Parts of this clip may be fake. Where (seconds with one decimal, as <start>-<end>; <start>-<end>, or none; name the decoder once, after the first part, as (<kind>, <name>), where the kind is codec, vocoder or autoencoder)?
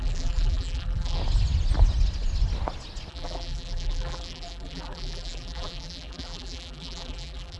0.0-1.2 (vocoder, BigVGAN v2); 3.1-7.6